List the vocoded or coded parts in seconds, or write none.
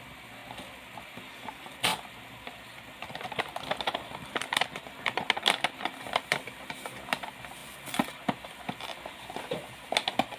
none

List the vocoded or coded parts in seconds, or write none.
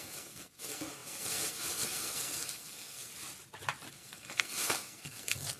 0.0-3.1 (codec, SNAC); 3.9-5.6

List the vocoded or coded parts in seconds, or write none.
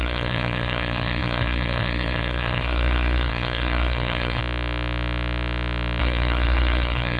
0.0-4.4 (codec, SNAC); 6.0-7.2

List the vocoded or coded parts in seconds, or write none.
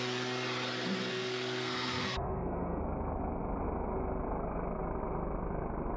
1.1-2.8 (codec, SNAC)